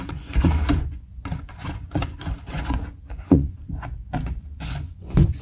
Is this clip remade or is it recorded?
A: remade